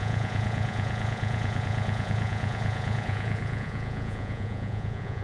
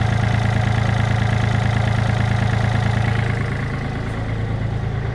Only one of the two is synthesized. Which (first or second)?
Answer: first